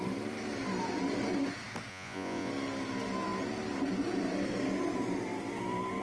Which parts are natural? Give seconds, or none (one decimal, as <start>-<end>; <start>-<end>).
0.0-1.9; 2.5-6.0